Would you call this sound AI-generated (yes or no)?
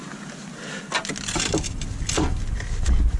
no